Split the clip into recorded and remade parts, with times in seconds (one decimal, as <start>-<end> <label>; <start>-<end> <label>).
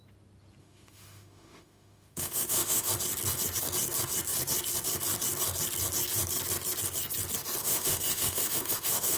0.0-0.6 recorded; 0.6-2.9 remade; 2.9-7.6 recorded; 7.6-9.2 remade